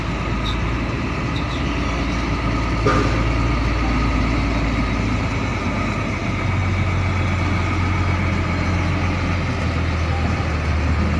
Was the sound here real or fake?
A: real